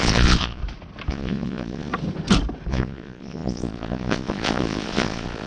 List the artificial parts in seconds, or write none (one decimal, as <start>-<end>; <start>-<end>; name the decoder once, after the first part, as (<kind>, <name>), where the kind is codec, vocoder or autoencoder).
0.0-0.6 (vocoder, Vocos); 1.1-1.9; 2.7-5.5